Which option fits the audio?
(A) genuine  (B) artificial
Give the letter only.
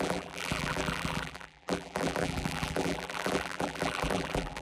B